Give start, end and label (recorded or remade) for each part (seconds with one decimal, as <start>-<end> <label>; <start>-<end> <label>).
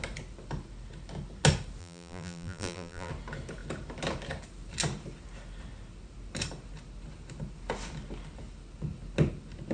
0.0-1.8 recorded; 1.8-3.1 remade; 3.1-9.7 recorded